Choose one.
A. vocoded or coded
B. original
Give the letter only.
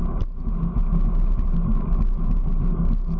B